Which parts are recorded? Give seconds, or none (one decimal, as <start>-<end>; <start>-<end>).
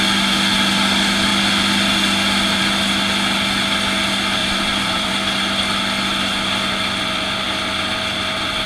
0.0-4.4; 5.1-8.7